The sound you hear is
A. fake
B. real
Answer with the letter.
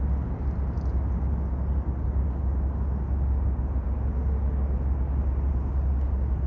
B